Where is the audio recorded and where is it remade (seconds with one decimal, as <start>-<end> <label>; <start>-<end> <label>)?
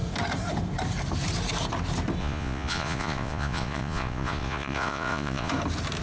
0.0-2.2 recorded; 2.2-5.5 remade; 5.5-6.0 recorded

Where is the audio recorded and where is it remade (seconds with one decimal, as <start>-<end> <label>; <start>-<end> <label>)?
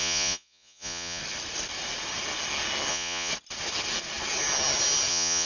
0.0-1.2 remade; 1.2-2.9 recorded; 2.9-3.3 remade; 3.3-5.1 recorded; 5.1-5.5 remade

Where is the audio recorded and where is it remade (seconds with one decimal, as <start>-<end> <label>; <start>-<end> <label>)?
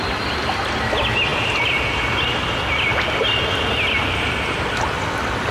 0.0-5.5 recorded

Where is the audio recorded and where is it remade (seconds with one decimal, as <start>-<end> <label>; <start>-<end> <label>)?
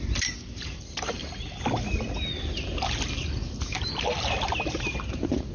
0.0-1.2 remade; 1.2-4.5 recorded; 4.5-5.5 remade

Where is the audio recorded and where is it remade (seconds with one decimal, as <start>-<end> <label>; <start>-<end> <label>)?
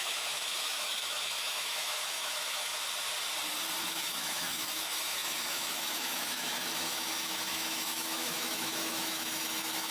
0.0-2.7 remade; 2.7-3.8 recorded; 3.8-9.9 remade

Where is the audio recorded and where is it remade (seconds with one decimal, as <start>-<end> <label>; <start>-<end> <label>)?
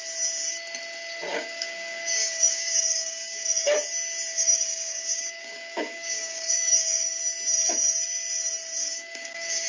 0.0-1.3 recorded; 1.3-3.7 remade; 3.7-4.3 recorded; 4.3-7.2 remade; 7.2-8.8 recorded; 8.8-9.7 remade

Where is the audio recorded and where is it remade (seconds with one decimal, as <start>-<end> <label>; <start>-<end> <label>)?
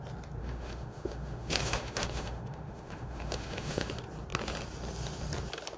0.0-0.4 recorded; 0.4-3.9 remade; 3.9-5.8 recorded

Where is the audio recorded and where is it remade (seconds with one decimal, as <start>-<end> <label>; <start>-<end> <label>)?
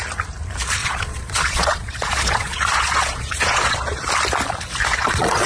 0.0-0.8 recorded; 0.8-4.1 remade; 4.1-4.8 recorded; 4.8-5.5 remade